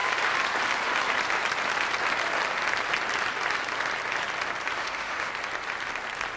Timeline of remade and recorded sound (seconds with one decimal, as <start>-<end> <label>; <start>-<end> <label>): 0.0-4.8 recorded; 4.8-5.3 remade; 5.3-6.4 recorded